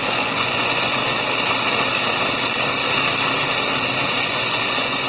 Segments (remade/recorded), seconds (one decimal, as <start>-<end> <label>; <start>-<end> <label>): 0.0-1.0 remade; 1.0-4.1 recorded; 4.1-5.1 remade

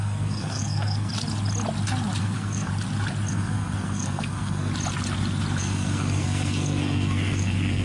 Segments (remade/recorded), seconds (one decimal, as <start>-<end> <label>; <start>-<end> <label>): 0.0-1.1 remade; 1.1-2.2 recorded; 2.2-2.7 remade; 2.7-3.3 recorded; 3.3-4.7 remade; 4.7-5.6 recorded; 5.6-7.8 remade

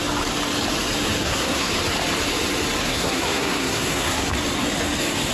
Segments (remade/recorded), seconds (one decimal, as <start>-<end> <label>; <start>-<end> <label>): 0.0-1.2 recorded; 1.2-1.7 remade; 1.7-2.8 recorded; 2.8-4.3 remade; 4.3-5.3 recorded

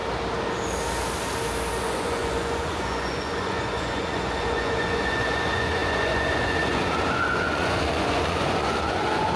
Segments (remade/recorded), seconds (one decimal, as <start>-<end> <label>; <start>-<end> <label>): 0.0-1.8 recorded; 1.8-9.4 remade

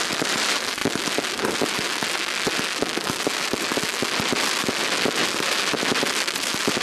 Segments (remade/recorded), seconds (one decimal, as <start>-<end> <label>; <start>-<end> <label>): 0.0-0.8 remade; 0.8-4.3 recorded; 4.3-6.8 remade

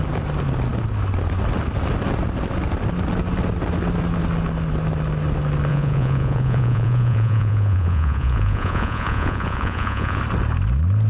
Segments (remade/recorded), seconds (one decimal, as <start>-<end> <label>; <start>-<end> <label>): 0.0-5.7 recorded; 5.7-10.2 remade; 10.2-11.1 recorded

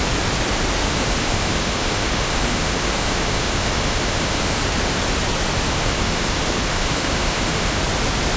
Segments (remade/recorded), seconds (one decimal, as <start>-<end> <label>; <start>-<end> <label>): 0.0-0.8 recorded; 0.8-4.6 remade; 4.6-5.7 recorded; 5.7-7.8 remade; 7.8-8.4 recorded